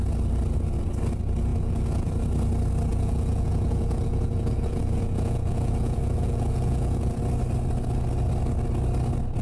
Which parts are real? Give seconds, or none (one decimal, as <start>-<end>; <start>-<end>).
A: 0.0-1.5; 2.1-2.9; 7.2-9.4